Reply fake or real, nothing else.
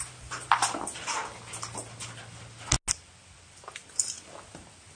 real